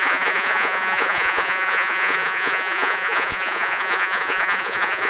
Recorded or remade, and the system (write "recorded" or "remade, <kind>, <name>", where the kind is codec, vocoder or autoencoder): remade, vocoder, Vocos